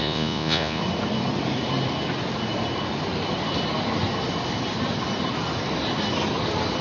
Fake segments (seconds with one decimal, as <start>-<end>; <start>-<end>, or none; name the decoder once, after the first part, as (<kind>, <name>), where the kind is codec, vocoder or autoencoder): 0.0-0.8 (vocoder, Vocos)